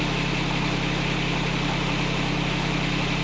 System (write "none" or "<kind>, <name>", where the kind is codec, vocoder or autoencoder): none